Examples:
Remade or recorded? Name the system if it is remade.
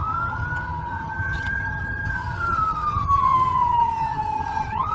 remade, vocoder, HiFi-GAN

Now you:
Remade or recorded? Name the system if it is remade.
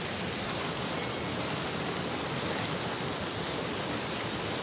recorded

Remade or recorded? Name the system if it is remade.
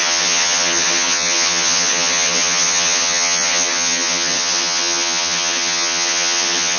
remade, vocoder, HiFi-GAN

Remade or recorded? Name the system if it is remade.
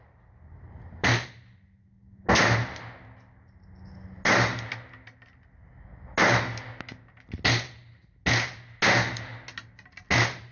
recorded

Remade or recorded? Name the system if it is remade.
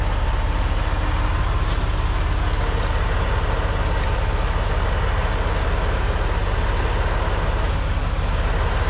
recorded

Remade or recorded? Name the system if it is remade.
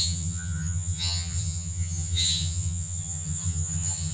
remade, vocoder, HiFi-GAN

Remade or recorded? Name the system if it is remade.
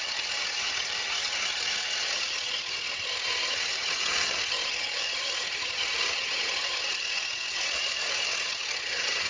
remade, vocoder, HiFi-GAN